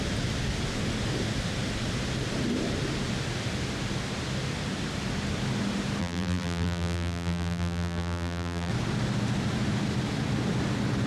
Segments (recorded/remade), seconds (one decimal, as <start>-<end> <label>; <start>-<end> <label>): 0.0-6.0 recorded; 6.0-8.7 remade; 8.7-11.1 recorded